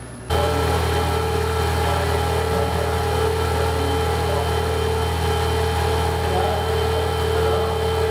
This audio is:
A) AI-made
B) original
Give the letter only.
B